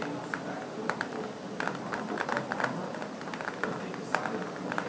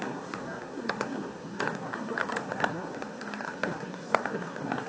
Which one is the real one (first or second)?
first